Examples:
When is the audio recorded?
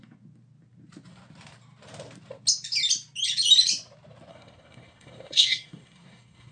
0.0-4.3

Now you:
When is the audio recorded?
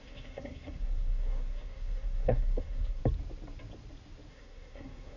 3.0-4.3